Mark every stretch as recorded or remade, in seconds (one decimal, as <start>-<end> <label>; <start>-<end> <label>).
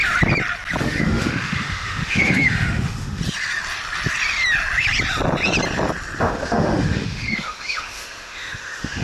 0.0-0.8 recorded; 0.8-3.2 remade; 3.2-6.2 recorded; 6.2-9.0 remade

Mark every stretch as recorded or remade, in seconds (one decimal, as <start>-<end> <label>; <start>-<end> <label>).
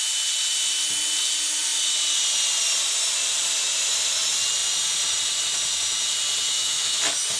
0.0-6.5 recorded; 6.5-7.0 remade; 7.0-7.4 recorded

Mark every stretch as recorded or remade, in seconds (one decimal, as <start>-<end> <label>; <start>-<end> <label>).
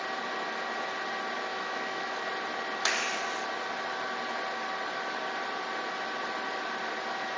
0.0-1.5 recorded; 1.5-2.2 remade; 2.2-7.4 recorded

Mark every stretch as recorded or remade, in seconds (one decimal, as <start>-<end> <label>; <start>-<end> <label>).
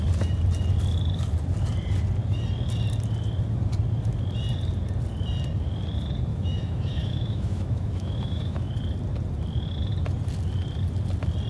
0.0-6.3 recorded; 6.3-8.7 remade; 8.7-11.5 recorded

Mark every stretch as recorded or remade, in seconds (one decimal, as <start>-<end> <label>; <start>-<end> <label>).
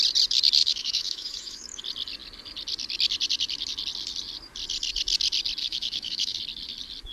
0.0-0.6 recorded; 0.6-1.8 remade; 1.8-5.6 recorded; 5.6-6.4 remade; 6.4-7.1 recorded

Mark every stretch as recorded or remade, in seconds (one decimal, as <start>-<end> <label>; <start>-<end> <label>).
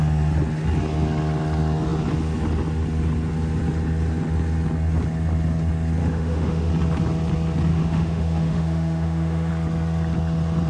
0.0-6.0 recorded; 6.0-6.7 remade; 6.7-7.7 recorded; 7.7-9.5 remade; 9.5-10.7 recorded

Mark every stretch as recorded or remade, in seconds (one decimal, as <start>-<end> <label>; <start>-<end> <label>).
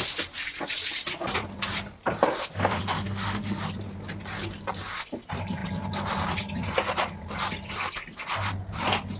0.0-2.4 recorded; 2.4-3.6 remade; 3.6-9.2 recorded